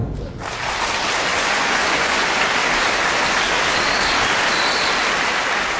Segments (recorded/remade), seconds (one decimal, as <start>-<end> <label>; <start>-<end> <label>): 0.0-1.3 recorded; 1.3-2.4 remade; 2.4-5.8 recorded